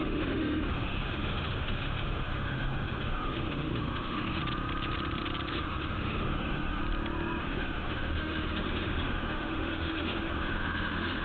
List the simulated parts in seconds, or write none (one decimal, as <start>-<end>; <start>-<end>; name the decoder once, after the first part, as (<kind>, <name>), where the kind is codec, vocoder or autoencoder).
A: 0.0-4.4 (autoencoder, DAC-VAE); 5.5-6.8; 7.4-11.2